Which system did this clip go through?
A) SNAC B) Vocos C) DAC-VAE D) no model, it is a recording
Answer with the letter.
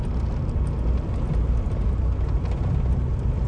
D